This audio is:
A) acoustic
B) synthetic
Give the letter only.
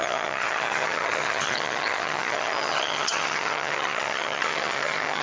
B